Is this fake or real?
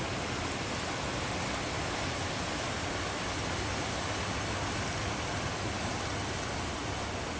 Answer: real